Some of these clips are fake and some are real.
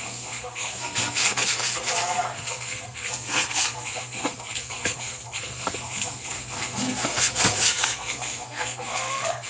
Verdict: fake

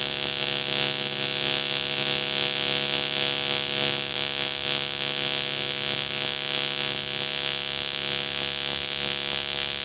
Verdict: real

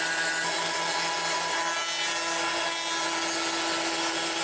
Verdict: real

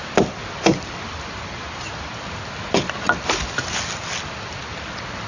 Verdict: real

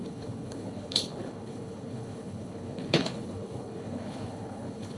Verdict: fake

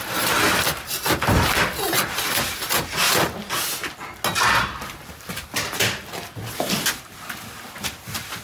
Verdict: real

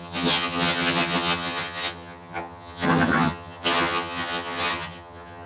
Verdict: fake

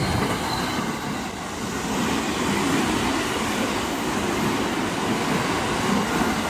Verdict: real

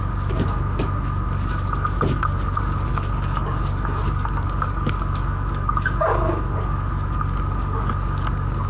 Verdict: fake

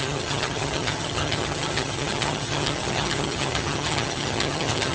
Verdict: fake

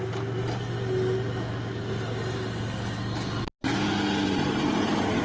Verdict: real